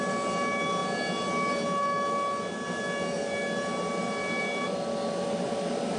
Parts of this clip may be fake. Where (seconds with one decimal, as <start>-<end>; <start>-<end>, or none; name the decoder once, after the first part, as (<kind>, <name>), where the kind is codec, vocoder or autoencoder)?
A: none

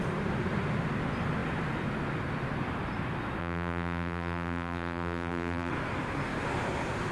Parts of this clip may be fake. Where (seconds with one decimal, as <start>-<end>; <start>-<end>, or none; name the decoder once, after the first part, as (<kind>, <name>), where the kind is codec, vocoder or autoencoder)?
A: 3.4-5.7 (vocoder, BigVGAN v2)

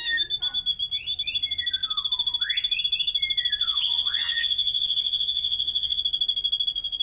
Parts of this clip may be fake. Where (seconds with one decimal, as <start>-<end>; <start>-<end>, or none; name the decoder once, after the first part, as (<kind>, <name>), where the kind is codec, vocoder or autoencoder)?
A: 3.6-6.0 (vocoder, Vocos)

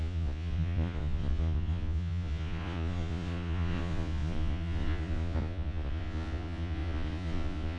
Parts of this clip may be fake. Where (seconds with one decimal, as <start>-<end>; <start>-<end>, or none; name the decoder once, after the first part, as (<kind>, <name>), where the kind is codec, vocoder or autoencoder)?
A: 0.0-7.8 (vocoder, Vocos)

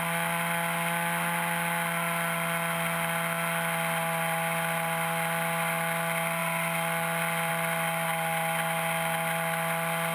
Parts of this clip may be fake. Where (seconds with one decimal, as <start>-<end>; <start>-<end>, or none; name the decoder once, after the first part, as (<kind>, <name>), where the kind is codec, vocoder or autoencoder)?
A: none

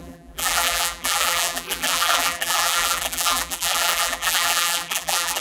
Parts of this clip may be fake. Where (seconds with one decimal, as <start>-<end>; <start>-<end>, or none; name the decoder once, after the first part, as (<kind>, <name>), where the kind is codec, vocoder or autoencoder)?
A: 0.0-5.4 (vocoder, BigVGAN v2)